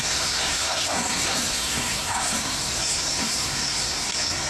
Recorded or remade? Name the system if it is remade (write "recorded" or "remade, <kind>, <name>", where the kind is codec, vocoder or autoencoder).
remade, codec, SNAC